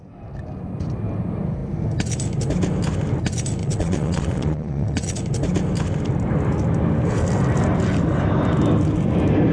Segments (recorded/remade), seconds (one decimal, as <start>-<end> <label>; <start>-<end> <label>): 0.0-3.6 recorded; 3.6-5.2 remade; 5.2-9.5 recorded